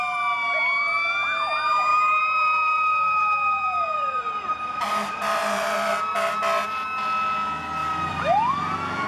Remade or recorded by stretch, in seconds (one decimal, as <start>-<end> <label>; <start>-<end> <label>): 0.0-1.9 recorded; 1.9-5.9 remade; 5.9-7.8 recorded; 7.8-8.5 remade; 8.5-9.1 recorded

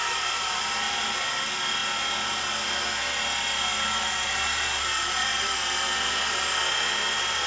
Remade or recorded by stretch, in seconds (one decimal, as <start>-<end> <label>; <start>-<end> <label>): 0.0-0.6 remade; 0.6-7.5 recorded

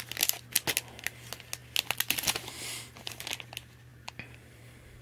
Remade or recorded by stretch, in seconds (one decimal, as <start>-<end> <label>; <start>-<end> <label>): 0.0-3.9 recorded; 3.9-4.6 remade; 4.6-5.0 recorded

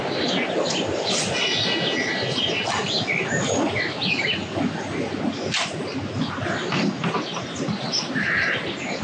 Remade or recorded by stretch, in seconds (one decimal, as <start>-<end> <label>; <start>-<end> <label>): 0.0-9.0 recorded

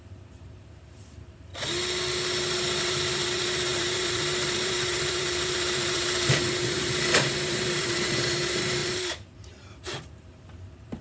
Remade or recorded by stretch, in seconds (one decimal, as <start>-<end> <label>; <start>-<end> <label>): 0.0-1.5 remade; 1.5-2.8 recorded; 2.8-11.0 remade

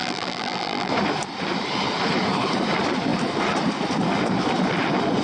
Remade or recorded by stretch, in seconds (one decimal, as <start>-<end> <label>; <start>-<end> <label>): 0.0-0.9 remade; 0.9-5.2 recorded

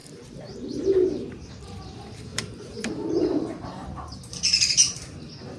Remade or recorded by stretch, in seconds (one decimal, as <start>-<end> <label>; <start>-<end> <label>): 0.0-1.5 remade; 1.5-2.3 recorded; 2.3-4.9 remade; 4.9-5.6 recorded

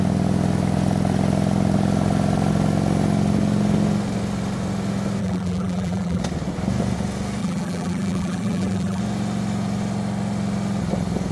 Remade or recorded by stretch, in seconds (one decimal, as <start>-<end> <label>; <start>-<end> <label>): 0.0-5.2 recorded; 5.2-6.2 remade; 6.2-7.4 recorded; 7.4-9.0 remade; 9.0-11.3 recorded